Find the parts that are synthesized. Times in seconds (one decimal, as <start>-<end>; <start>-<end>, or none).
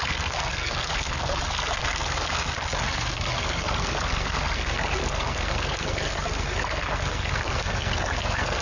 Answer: 0.0-8.6